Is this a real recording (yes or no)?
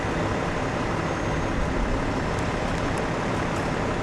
yes